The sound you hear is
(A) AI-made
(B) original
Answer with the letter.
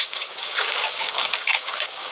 A